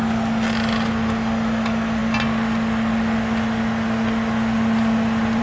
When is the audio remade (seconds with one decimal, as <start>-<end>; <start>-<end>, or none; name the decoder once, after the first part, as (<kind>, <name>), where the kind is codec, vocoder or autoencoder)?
none